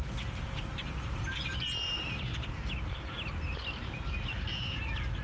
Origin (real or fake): real